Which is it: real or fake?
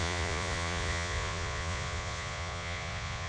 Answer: fake